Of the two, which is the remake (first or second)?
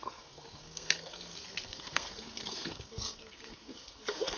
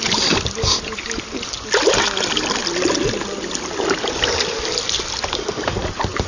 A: first